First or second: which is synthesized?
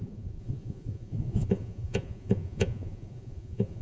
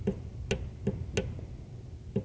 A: first